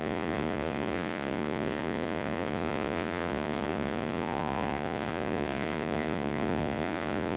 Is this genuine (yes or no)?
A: no